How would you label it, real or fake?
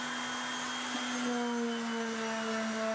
real